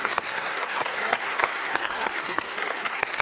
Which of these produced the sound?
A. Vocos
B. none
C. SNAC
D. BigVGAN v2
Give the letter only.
C